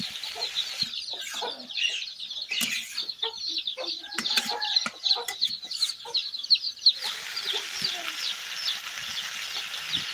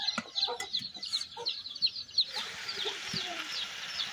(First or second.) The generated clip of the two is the second